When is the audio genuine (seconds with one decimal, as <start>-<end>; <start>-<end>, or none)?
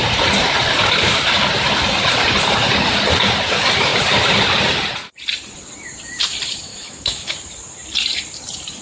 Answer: 0.0-6.7; 7.3-8.8